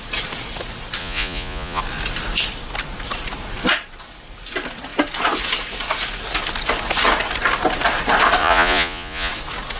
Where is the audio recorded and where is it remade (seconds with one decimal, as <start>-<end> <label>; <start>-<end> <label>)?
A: 0.0-1.0 recorded; 1.0-1.8 remade; 1.8-8.4 recorded; 8.4-9.3 remade; 9.3-9.8 recorded